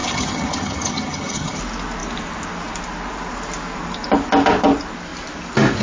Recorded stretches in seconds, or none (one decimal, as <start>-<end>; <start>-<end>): 1.6-5.8